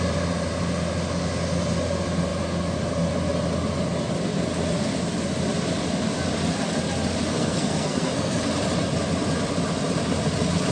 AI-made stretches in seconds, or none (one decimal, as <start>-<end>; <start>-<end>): 7.3-8.4

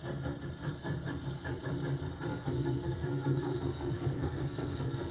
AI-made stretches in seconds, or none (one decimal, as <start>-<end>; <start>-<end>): 2.3-5.1

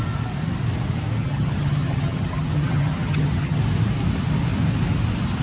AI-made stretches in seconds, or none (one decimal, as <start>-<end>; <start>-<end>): 1.2-3.6

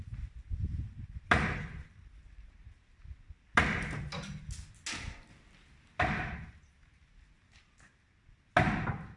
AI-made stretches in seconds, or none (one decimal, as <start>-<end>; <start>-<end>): none

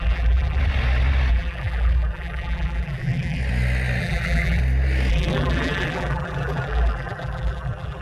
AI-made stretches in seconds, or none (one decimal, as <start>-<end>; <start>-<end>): 0.0-0.6; 1.3-3.4; 4.0-4.6; 5.1-8.0

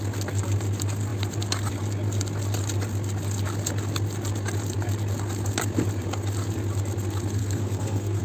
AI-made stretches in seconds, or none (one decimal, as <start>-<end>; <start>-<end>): 7.4-8.2

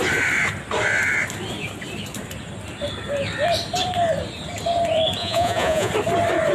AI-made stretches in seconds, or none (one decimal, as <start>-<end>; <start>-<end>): 5.2-5.9

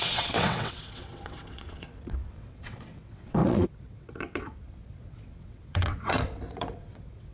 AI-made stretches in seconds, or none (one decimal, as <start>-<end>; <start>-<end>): 0.0-7.3